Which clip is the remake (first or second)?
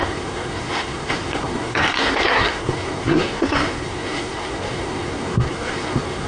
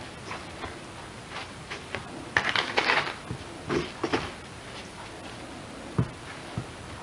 first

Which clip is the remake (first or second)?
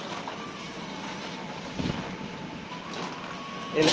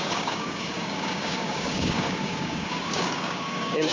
second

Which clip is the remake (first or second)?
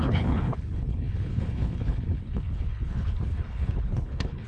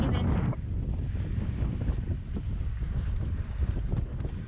first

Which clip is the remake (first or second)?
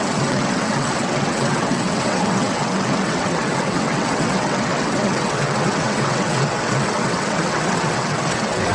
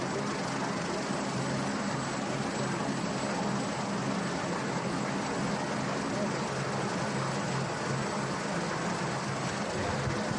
first